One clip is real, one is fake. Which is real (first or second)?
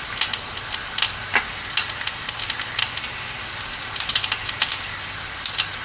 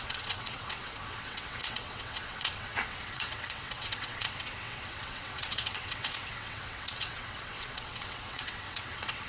first